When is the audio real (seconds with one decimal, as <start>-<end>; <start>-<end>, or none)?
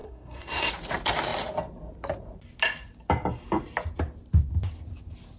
0.7-5.4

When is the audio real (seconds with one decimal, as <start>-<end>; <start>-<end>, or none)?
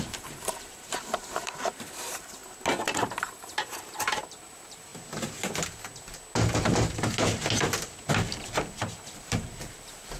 2.4-2.9; 4.9-8.1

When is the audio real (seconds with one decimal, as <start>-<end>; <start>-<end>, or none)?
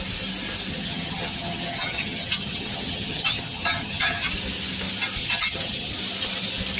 0.0-0.7; 4.3-5.2; 5.9-6.8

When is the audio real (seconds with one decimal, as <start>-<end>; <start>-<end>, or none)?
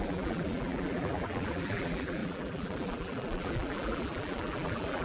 none